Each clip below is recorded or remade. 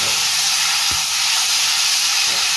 recorded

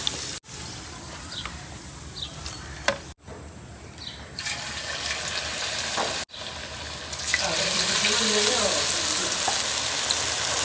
recorded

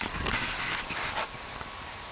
recorded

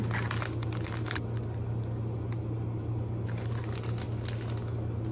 recorded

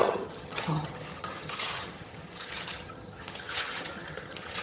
remade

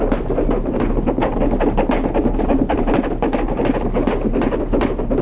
recorded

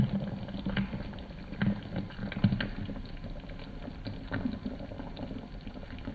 recorded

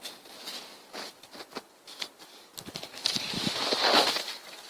recorded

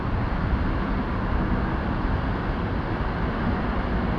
recorded